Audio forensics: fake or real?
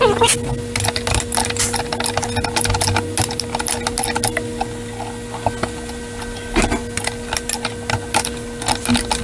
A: real